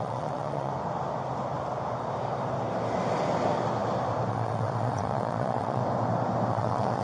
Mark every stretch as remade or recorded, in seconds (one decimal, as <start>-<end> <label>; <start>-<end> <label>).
0.0-0.7 remade; 0.7-4.3 recorded; 4.3-5.8 remade; 5.8-6.5 recorded; 6.5-7.0 remade